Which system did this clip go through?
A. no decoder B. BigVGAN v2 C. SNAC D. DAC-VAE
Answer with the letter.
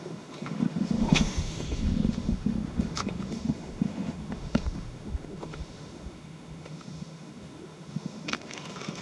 D